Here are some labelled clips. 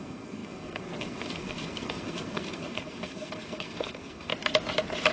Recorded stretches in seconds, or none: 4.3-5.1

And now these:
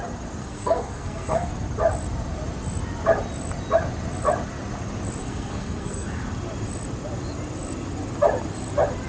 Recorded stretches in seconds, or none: 0.0-0.4; 1.5-5.2; 6.2-9.1

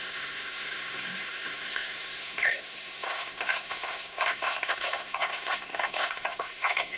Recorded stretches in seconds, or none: none